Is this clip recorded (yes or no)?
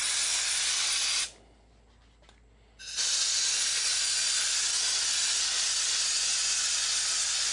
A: yes